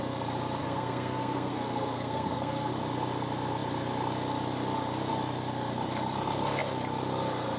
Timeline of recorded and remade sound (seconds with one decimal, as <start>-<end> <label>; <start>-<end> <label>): 0.0-0.6 recorded; 0.6-2.7 remade; 2.7-7.6 recorded